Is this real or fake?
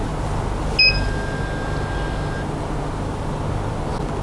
real